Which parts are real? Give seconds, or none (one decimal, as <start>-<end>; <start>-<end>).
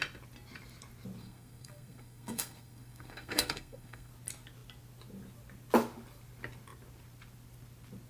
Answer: 0.0-1.2; 4.1-8.1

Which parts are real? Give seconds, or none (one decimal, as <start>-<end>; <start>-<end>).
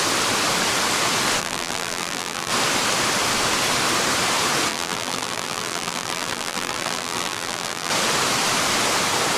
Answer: 0.0-1.4; 2.5-4.7; 7.9-9.4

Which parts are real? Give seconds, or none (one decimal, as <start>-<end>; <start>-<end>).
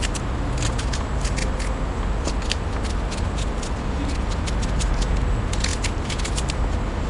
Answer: 0.0-7.1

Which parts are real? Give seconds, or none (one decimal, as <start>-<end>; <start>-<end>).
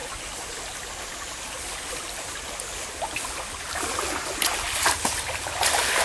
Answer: 0.0-6.0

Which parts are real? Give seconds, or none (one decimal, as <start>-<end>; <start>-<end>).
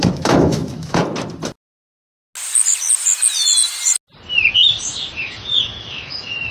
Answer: 1.0-4.9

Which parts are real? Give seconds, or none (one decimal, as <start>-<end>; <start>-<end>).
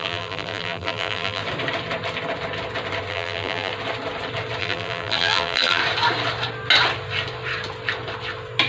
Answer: 1.4-3.1; 3.7-4.6; 5.8-8.7